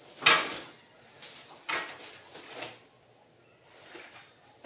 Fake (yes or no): no